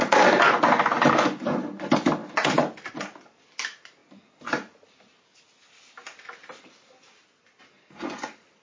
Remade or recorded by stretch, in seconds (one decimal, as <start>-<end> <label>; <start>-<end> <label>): 0.0-8.6 recorded